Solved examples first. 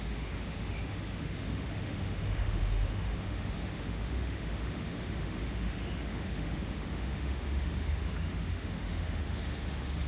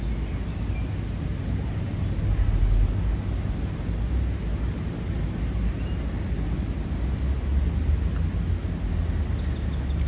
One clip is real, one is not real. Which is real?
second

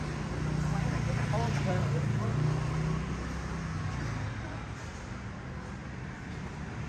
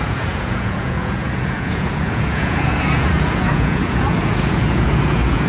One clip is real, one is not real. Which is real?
first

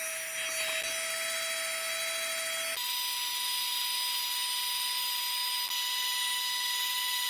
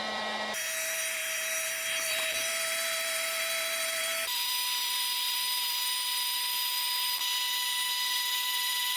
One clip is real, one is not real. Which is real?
first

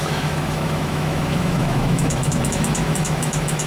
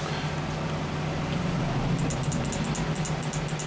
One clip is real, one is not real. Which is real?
second